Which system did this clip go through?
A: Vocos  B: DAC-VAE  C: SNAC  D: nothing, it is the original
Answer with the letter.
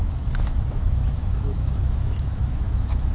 B